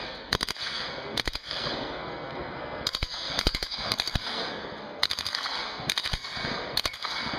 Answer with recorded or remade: remade